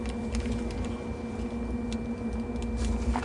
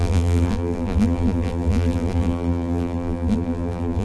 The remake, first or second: second